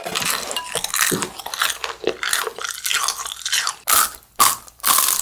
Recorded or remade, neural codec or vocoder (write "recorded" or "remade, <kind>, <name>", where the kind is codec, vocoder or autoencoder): recorded